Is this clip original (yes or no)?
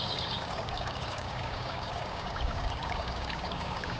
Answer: no